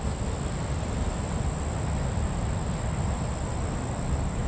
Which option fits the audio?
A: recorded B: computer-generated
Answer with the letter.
A